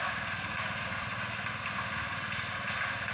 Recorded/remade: recorded